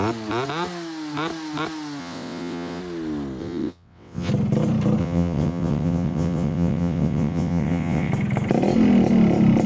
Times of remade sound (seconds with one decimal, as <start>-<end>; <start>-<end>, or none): 2.0-2.8; 3.4-4.3; 5.0-8.1